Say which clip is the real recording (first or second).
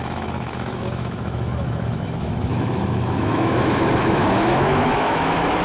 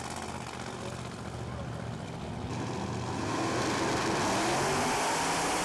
second